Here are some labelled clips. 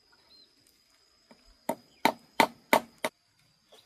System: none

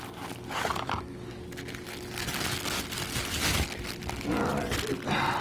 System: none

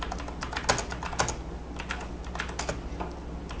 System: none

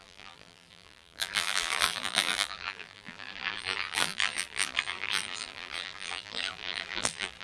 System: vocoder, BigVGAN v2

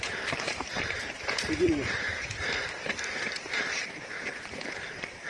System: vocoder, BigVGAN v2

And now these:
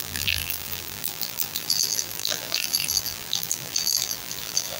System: vocoder, BigVGAN v2